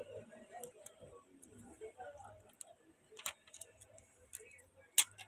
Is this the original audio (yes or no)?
yes